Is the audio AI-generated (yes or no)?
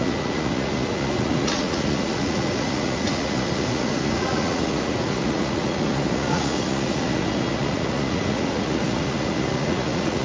yes